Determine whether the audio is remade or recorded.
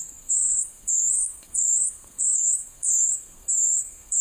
remade